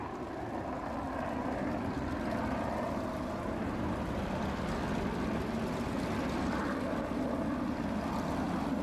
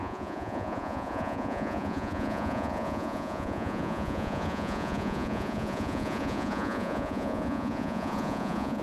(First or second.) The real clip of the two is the first